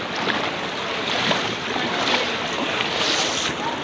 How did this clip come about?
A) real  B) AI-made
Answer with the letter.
A